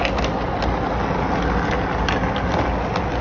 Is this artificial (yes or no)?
no